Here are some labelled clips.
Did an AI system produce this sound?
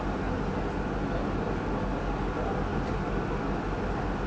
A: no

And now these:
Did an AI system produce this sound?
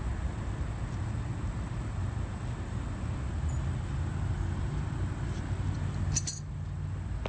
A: no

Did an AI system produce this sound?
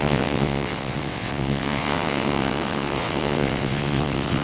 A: yes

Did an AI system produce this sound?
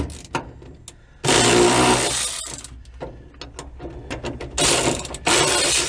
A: no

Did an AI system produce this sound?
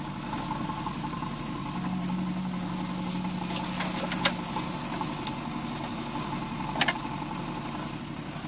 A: no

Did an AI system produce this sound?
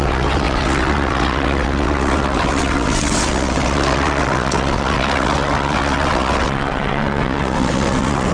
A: yes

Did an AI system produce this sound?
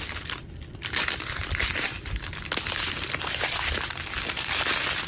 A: no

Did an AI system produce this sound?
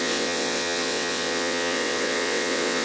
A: yes